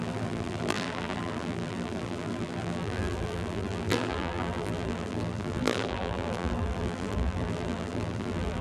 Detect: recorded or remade remade